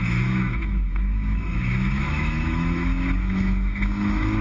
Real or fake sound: fake